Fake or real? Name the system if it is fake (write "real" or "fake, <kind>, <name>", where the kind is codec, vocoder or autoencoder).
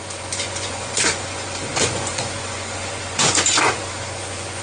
fake, vocoder, Vocos